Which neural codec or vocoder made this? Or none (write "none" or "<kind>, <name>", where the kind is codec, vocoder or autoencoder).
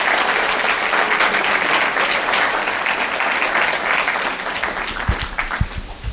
none